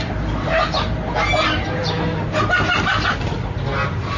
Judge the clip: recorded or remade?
recorded